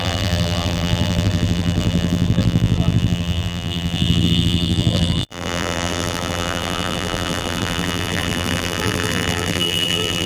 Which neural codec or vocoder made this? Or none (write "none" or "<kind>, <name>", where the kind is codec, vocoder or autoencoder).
vocoder, BigVGAN v2